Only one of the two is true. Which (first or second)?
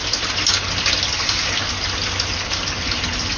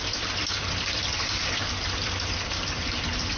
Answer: first